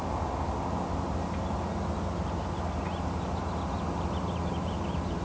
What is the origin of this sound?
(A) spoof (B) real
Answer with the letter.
B